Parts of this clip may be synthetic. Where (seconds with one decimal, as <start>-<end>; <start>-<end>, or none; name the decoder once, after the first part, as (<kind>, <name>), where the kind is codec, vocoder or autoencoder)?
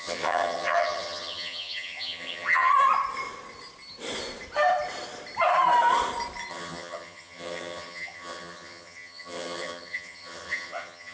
0.0-2.7 (vocoder, HiFi-GAN); 6.5-11.1